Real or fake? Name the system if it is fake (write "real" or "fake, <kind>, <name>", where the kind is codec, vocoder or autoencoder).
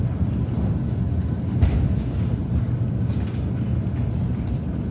real